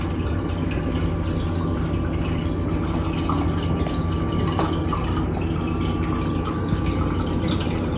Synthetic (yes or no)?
no